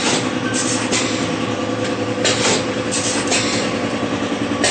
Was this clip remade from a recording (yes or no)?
no